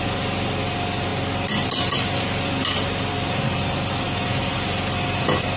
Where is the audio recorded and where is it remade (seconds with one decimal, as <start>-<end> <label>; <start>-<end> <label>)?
0.0-5.6 recorded